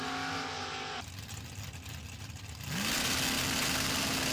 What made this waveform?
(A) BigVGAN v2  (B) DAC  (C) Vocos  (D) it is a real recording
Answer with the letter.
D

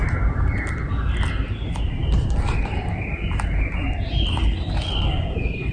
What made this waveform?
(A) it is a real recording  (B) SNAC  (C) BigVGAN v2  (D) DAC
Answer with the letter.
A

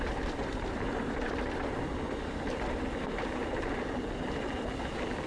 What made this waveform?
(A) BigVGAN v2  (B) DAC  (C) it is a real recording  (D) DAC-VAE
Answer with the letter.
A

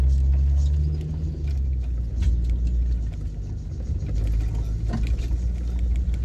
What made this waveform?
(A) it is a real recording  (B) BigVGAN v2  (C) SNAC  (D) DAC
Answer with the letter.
A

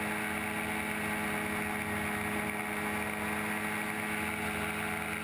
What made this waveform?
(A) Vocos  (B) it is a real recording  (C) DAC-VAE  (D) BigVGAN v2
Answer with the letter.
B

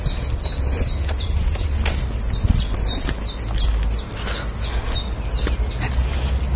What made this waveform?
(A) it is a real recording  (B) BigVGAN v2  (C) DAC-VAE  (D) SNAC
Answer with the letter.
A